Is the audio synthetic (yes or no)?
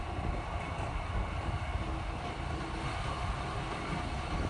no